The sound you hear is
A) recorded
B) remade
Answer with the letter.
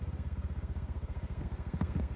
B